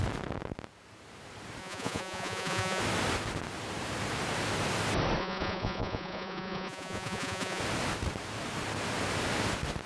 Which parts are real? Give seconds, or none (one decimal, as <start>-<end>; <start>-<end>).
0.0-1.6; 2.8-5.2; 7.6-9.9